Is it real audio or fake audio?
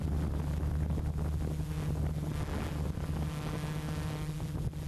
real